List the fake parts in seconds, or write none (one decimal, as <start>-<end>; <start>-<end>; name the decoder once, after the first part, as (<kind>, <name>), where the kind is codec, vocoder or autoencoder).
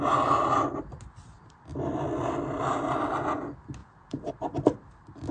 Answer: 3.8-4.3 (vocoder, Vocos)